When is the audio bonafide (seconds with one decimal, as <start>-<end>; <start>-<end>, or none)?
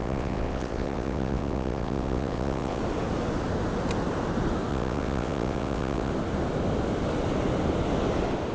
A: 2.8-4.7; 6.1-8.5